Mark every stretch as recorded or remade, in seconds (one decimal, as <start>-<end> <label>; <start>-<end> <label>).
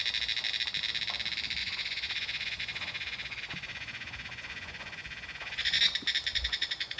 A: 0.0-1.6 recorded; 1.6-5.8 remade; 5.8-6.3 recorded; 6.3-7.0 remade